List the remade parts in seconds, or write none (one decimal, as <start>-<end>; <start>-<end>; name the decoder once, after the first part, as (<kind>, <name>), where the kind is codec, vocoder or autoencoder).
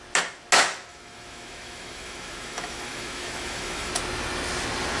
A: 0.9-3.9 (autoencoder, DAC-VAE)